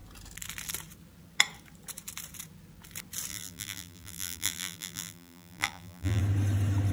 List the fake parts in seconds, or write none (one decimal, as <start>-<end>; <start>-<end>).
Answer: 3.3-6.2